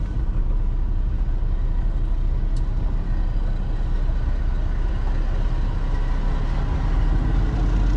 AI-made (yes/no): no